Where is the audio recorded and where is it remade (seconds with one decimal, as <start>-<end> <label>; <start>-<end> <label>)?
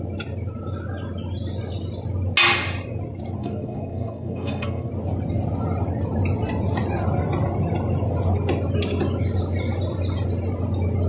0.0-3.4 recorded; 3.4-4.9 remade; 4.9-11.1 recorded